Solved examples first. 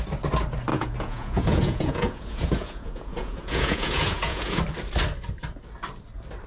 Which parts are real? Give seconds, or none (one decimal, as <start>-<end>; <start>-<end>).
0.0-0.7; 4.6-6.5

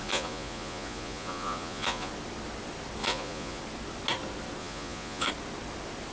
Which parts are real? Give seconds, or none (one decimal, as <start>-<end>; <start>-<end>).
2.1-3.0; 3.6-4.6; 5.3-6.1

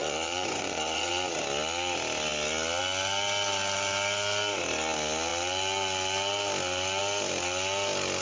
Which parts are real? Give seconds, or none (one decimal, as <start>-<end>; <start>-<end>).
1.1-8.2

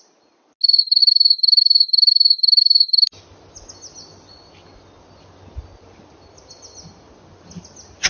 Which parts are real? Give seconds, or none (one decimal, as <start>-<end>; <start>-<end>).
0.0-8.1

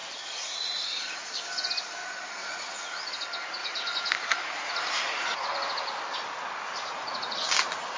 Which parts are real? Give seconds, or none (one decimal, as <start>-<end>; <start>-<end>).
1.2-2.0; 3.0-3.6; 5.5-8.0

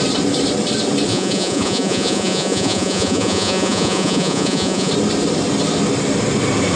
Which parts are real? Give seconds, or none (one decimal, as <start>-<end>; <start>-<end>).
0.0-1.1; 4.9-6.8